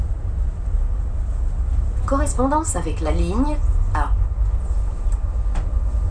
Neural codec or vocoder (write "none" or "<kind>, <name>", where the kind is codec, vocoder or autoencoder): none